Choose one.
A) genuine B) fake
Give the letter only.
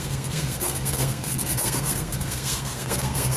B